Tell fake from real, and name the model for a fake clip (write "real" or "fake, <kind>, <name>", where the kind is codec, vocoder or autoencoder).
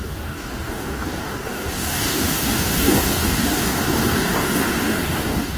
fake, codec, DAC